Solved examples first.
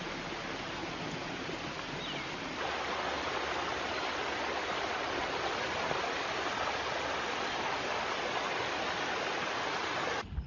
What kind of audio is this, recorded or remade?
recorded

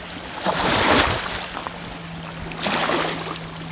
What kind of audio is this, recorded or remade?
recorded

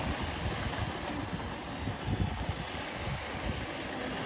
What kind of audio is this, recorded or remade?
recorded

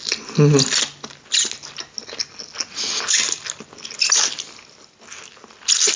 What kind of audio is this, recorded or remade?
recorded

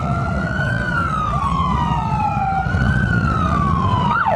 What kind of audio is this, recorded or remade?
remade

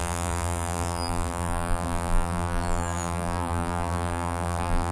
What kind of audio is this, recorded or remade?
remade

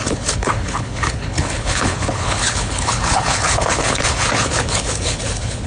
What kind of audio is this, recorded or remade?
remade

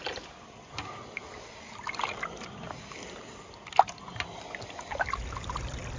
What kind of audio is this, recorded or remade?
recorded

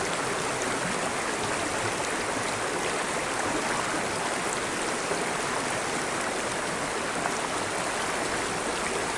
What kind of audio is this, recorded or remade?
recorded